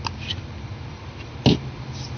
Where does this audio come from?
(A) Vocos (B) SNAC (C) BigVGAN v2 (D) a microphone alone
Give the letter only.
D